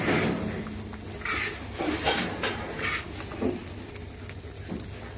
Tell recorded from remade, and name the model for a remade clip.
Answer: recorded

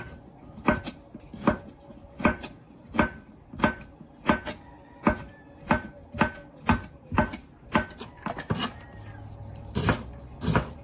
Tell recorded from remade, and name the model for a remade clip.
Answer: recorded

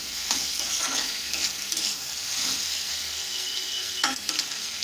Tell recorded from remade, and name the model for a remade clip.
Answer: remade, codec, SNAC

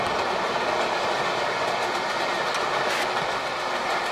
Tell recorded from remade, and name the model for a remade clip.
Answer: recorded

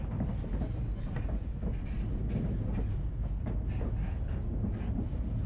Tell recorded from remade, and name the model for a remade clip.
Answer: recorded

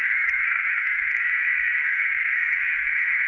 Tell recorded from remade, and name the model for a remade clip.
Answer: remade, codec, SNAC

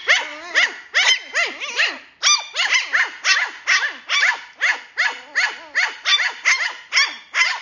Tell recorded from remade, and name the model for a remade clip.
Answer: recorded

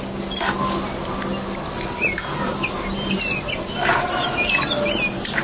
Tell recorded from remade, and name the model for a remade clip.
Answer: recorded